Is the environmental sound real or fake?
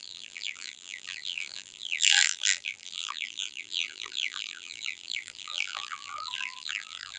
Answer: fake